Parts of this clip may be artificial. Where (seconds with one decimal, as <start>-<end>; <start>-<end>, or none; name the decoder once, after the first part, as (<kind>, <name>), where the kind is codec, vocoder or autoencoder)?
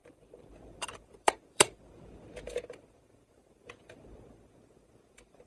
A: 0.0-5.5 (vocoder, BigVGAN v2)